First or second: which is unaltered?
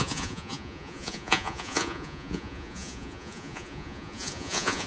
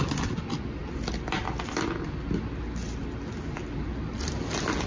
second